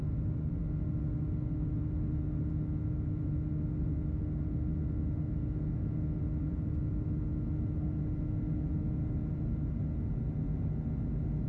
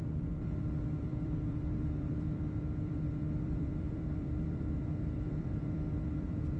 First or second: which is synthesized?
second